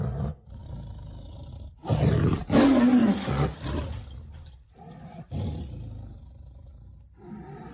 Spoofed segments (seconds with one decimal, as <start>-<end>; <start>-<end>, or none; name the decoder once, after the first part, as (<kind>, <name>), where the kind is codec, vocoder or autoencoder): none